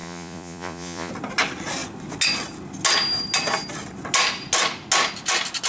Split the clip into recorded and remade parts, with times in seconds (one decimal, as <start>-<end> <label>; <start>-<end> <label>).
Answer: 0.0-1.1 remade; 1.1-5.7 recorded